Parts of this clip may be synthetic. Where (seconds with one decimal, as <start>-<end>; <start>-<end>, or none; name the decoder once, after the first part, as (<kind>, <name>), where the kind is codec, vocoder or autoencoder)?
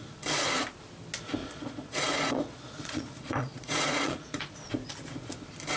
1.4-4.7 (vocoder, Vocos)